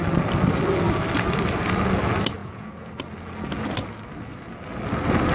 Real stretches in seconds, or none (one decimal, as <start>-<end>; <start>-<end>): 0.0-2.4; 2.9-5.3